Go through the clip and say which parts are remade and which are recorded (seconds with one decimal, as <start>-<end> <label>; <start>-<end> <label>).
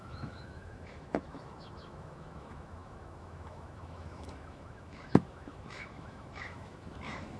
0.0-7.4 remade